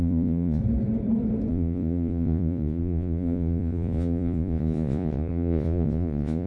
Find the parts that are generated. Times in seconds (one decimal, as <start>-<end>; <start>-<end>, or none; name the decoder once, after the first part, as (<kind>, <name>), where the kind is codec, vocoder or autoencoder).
0.0-0.6 (vocoder, Vocos); 1.5-6.5